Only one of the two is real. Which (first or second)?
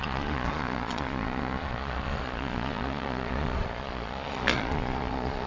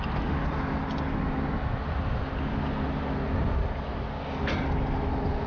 second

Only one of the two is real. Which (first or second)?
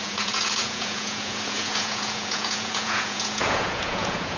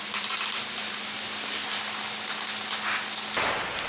second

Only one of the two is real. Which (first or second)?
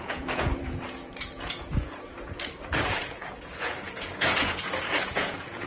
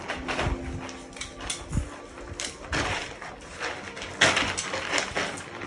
second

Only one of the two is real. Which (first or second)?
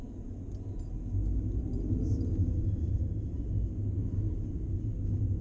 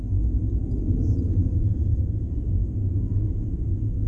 first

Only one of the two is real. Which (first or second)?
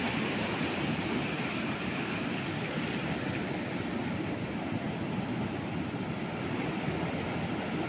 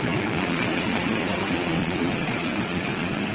first